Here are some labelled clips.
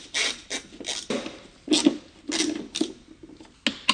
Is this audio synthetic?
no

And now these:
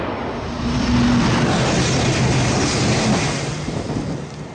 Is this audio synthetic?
no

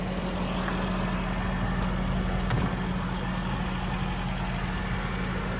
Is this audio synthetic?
no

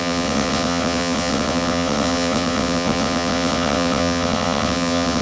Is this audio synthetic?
yes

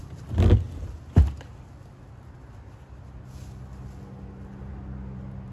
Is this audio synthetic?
no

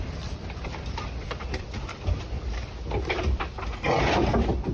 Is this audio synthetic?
yes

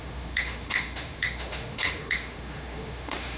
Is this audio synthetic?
yes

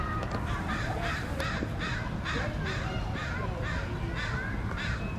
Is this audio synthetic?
no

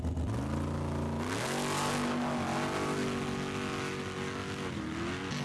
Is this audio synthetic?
no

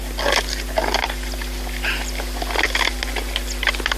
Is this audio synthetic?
no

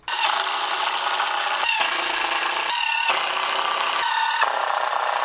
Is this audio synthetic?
no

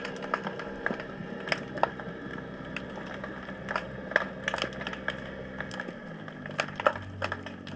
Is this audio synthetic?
no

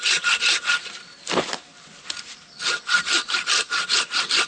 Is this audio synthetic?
no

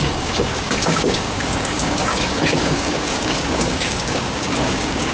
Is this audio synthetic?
yes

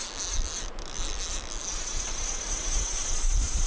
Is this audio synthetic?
no